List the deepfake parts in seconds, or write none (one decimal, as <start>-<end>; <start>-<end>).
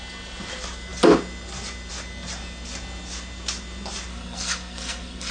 4.1-5.3